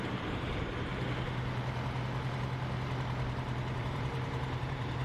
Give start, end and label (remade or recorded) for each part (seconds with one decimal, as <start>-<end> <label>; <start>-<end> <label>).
0.0-0.9 remade; 0.9-3.8 recorded; 3.8-5.0 remade